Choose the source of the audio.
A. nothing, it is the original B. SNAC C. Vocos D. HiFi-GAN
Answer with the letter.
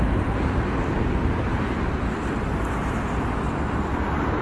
A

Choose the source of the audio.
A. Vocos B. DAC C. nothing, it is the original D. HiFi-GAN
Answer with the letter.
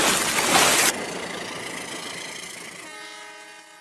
C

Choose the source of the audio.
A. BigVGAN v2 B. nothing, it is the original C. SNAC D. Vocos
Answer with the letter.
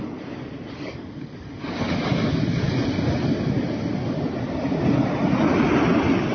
B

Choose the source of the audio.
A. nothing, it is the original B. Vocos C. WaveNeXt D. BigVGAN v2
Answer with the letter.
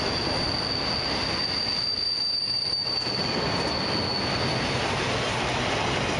A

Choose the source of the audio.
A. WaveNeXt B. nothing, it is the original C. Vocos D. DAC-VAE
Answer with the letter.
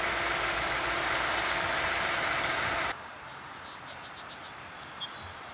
B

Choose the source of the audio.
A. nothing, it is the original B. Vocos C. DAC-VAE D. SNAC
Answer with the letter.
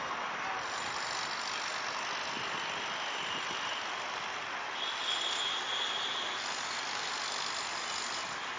A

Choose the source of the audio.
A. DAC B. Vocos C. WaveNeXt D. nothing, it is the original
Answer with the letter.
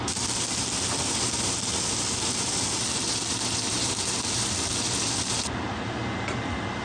D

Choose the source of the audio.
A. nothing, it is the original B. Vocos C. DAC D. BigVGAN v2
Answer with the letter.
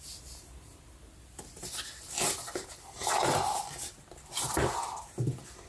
A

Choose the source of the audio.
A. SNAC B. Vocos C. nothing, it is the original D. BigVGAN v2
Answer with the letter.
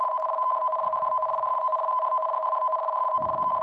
B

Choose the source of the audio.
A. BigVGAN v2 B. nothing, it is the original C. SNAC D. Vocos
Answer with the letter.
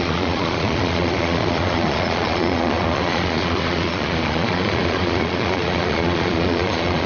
D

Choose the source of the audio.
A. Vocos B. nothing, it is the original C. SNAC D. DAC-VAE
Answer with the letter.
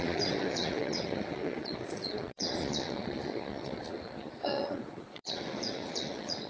A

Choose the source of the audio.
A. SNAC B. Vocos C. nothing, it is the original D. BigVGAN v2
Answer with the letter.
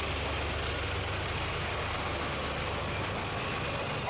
C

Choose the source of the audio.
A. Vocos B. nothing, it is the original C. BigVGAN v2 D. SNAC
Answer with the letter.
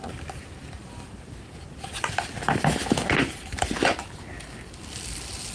B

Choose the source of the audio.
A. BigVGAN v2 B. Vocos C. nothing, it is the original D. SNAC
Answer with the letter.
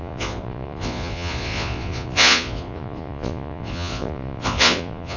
B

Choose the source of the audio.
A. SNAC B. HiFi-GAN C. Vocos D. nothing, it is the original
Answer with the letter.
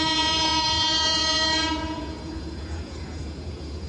C